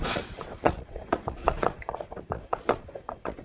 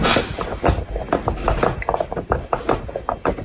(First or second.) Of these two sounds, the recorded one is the second